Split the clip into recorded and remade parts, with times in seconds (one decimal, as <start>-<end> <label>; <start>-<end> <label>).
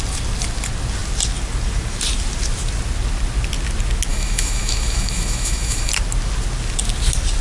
0.0-4.1 recorded; 4.1-5.9 remade; 5.9-7.4 recorded